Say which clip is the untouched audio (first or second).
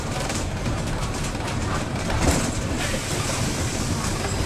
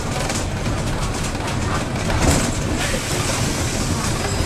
second